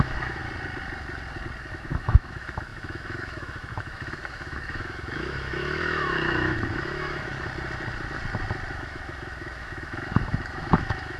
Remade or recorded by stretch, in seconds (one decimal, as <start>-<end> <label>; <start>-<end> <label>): 0.0-0.4 remade; 0.4-1.7 recorded; 1.7-7.3 remade; 7.3-8.7 recorded; 8.7-11.2 remade